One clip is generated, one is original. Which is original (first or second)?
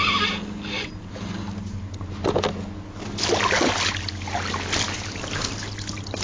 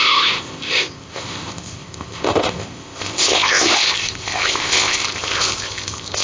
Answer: first